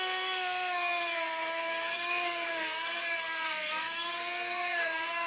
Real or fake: fake